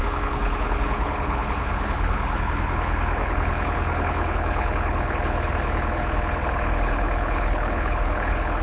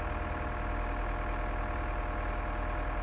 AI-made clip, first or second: first